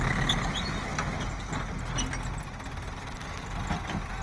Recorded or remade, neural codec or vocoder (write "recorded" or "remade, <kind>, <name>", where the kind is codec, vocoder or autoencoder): recorded